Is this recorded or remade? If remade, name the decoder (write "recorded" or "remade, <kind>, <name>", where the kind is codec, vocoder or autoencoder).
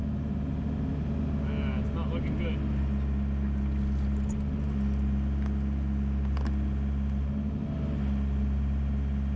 recorded